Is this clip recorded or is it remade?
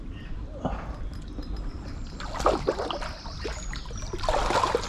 recorded